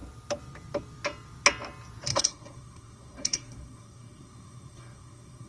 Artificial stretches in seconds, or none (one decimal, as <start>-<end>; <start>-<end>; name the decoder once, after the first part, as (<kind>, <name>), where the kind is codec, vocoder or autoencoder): 2.1-5.5 (codec, SNAC)